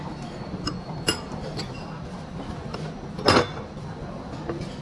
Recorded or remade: recorded